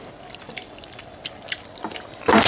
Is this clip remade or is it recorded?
recorded